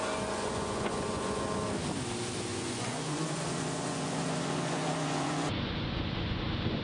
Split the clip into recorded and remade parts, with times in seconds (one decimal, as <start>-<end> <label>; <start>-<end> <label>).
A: 0.0-1.4 remade; 1.4-2.5 recorded; 2.5-6.8 remade